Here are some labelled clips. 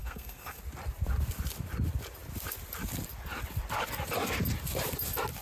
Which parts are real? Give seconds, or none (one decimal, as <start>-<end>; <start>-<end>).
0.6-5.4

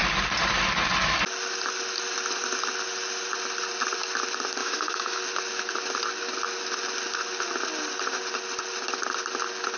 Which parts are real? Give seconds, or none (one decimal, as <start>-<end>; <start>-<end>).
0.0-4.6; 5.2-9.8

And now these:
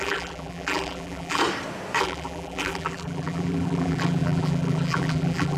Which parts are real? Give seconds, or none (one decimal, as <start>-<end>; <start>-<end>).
1.4-2.0

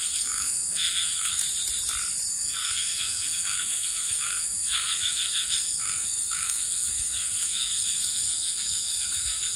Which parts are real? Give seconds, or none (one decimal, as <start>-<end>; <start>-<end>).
1.4-2.3

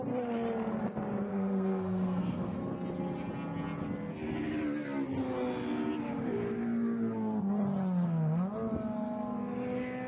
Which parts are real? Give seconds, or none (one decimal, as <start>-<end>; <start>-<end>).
0.0-1.3; 2.6-10.1

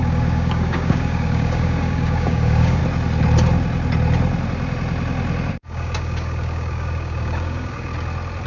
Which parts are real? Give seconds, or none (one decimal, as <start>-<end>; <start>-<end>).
2.8-5.5; 7.9-8.5

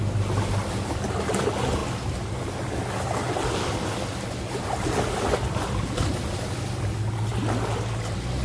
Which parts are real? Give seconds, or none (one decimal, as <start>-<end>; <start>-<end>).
0.0-8.4

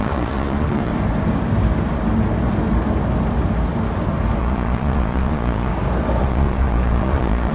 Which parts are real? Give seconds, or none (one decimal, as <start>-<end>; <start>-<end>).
0.9-4.4; 5.7-6.2